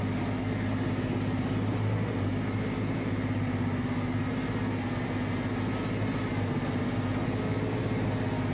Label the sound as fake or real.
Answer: real